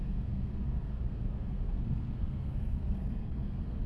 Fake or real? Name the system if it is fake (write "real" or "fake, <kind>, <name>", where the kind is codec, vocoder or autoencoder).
fake, codec, SNAC